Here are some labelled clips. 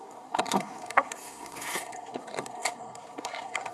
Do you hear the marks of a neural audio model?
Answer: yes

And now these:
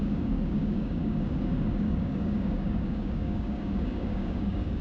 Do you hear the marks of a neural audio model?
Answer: yes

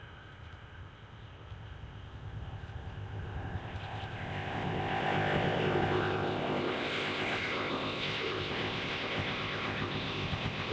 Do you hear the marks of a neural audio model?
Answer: yes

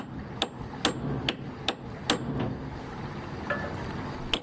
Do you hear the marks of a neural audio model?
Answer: no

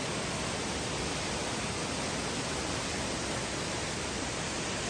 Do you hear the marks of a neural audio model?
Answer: no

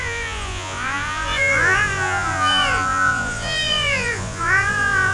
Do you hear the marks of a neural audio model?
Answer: yes